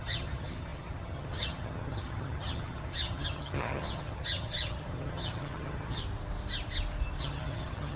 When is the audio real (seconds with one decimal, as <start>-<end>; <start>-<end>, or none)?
6.0-7.2